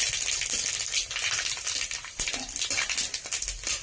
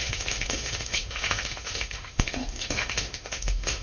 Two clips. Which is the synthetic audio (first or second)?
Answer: second